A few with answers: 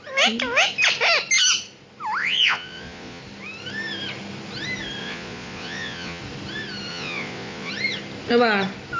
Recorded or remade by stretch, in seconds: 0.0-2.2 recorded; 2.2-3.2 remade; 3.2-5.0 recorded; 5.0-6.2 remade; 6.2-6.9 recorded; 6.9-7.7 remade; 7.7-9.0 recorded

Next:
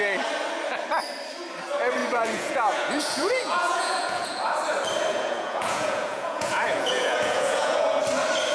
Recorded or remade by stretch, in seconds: 0.0-2.0 recorded; 2.0-4.4 remade; 4.4-5.1 recorded; 5.1-8.0 remade; 8.0-8.5 recorded

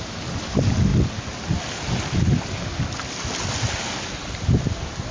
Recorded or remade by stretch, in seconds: 0.0-5.1 recorded

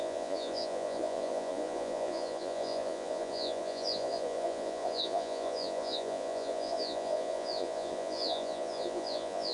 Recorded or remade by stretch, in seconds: 0.0-9.5 remade

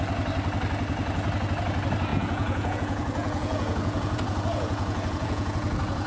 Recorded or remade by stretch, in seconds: 0.0-2.1 recorded; 2.1-6.1 remade

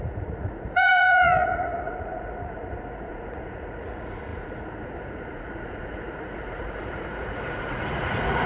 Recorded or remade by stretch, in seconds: 0.0-8.5 remade

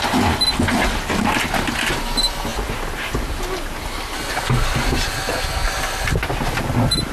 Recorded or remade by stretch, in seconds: 0.0-7.1 recorded

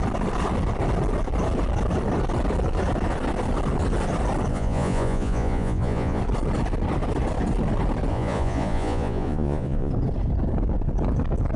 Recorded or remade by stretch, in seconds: 0.0-4.5 recorded; 4.5-6.2 remade; 6.2-8.1 recorded; 8.1-9.9 remade; 9.9-11.6 recorded